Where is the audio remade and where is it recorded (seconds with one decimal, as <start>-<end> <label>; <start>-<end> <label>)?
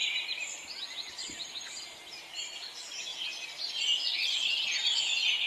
0.0-5.5 recorded